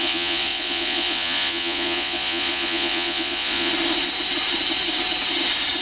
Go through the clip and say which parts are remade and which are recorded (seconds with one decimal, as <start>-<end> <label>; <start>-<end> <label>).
0.0-3.7 remade; 3.7-5.8 recorded